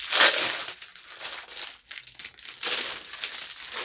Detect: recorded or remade recorded